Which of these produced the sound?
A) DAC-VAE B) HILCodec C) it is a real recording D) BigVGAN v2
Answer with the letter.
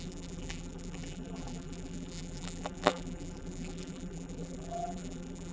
D